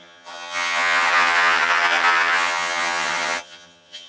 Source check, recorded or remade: remade